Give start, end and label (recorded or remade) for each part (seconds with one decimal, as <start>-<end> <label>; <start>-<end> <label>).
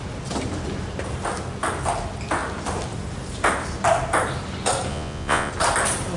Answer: 0.0-4.9 recorded; 4.9-5.5 remade; 5.5-6.2 recorded